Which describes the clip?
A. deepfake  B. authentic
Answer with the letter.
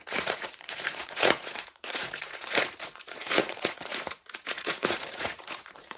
A